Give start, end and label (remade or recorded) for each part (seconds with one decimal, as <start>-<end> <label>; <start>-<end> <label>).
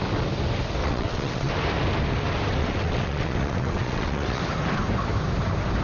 0.0-0.8 recorded; 0.8-1.5 remade; 1.5-2.6 recorded; 2.6-4.4 remade; 4.4-5.8 recorded